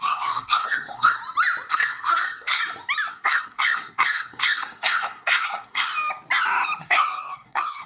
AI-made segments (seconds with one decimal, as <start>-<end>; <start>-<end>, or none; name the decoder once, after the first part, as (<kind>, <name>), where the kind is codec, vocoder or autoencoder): 0.0-1.2 (codec, SNAC); 1.7-2.6; 3.1-5.9; 6.8-7.9